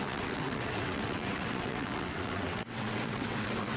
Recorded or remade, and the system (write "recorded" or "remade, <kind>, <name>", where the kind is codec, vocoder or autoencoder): remade, vocoder, WaveNeXt